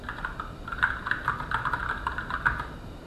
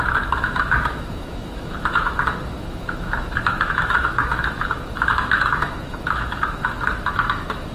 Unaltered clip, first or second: first